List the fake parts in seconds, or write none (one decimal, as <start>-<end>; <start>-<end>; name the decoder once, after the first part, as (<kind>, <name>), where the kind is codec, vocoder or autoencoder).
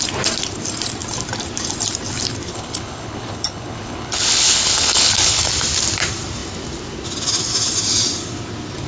2.5-5.4 (codec, HILCodec)